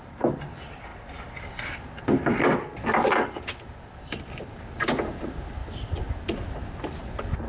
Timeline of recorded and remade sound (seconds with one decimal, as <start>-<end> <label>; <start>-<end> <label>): 0.0-7.5 recorded